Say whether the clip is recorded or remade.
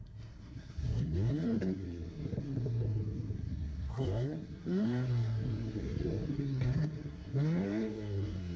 remade